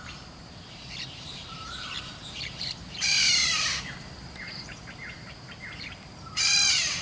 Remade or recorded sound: remade